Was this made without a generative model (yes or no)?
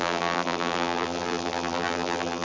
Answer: no